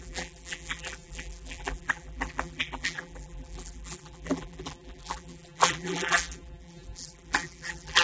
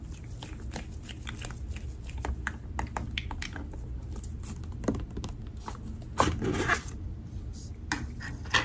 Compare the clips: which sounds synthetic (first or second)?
first